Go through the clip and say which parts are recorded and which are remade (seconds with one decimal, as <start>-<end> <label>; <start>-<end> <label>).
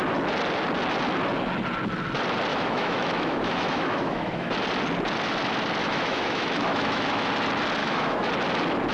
0.0-2.5 recorded; 2.5-4.5 remade; 4.5-5.8 recorded; 5.8-7.3 remade; 7.3-7.8 recorded; 7.8-8.3 remade; 8.3-8.9 recorded